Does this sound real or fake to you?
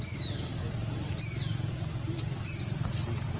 real